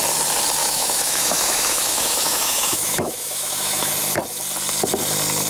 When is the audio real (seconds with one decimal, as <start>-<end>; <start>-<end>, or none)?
0.0-0.6; 3.9-5.5